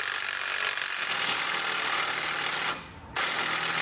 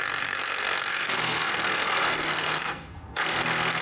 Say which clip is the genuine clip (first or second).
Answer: first